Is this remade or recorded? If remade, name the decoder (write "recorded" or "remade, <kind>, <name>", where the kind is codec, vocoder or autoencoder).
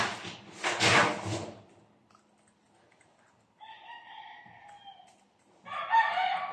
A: recorded